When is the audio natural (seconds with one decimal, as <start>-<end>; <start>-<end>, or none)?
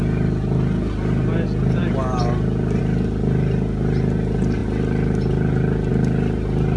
0.0-6.8